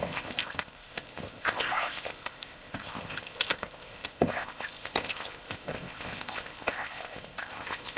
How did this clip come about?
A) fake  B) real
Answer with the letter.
A